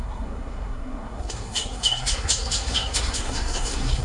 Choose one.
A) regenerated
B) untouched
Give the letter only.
A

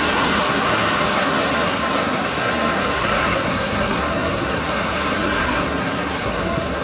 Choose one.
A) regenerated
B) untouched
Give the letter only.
A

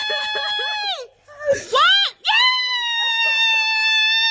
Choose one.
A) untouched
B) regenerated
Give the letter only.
A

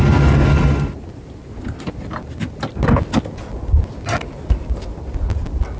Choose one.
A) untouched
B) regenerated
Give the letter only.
A